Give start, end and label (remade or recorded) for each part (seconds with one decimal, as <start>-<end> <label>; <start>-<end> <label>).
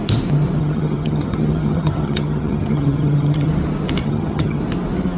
0.0-0.6 recorded; 0.6-3.5 remade; 3.5-4.0 recorded; 4.0-4.6 remade; 4.6-5.2 recorded